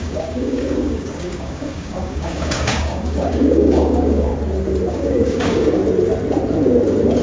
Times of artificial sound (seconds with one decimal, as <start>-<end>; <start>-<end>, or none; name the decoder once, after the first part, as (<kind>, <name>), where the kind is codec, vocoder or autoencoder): 0.0-4.3 (codec, DAC); 4.9-5.8